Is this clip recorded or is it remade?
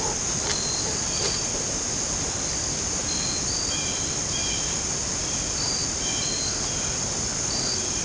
remade